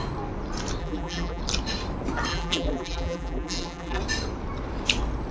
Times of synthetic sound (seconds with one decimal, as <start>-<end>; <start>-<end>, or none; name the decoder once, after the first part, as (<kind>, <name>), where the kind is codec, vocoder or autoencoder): 0.8-1.4 (vocoder, BigVGAN v2); 2.3-4.0